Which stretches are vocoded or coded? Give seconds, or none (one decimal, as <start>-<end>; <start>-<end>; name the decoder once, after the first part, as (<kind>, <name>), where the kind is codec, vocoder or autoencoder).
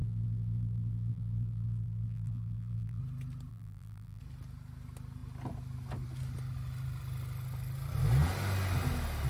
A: 0.0-3.0 (vocoder, BigVGAN v2); 3.5-4.2